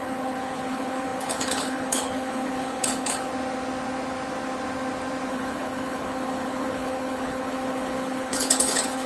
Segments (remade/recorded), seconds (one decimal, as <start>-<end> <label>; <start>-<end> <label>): 0.0-3.3 remade; 3.3-5.3 recorded; 5.3-9.1 remade